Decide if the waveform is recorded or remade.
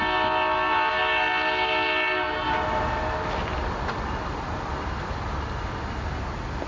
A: recorded